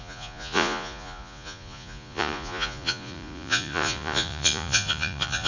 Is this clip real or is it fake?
fake